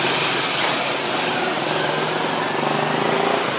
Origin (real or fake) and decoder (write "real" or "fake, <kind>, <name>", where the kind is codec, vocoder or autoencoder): real